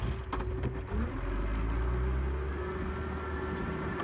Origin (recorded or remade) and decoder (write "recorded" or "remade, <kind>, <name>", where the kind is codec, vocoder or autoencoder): recorded